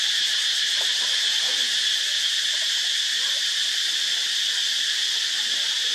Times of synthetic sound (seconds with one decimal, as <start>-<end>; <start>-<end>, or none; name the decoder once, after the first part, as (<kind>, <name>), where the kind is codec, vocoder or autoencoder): 0.0-3.6 (vocoder, BigVGAN v2); 5.4-5.9